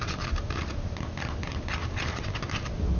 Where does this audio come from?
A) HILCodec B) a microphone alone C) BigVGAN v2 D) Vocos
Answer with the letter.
B